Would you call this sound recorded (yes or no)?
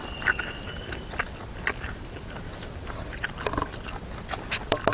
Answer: yes